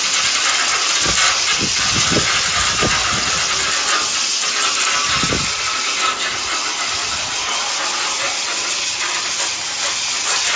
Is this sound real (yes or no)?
yes